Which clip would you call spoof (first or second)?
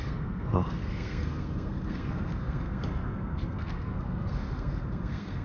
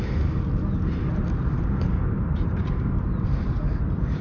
first